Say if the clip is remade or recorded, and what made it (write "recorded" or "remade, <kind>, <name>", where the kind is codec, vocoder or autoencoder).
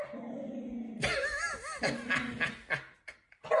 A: recorded